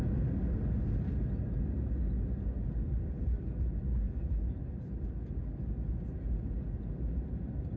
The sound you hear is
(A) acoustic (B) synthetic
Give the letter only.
A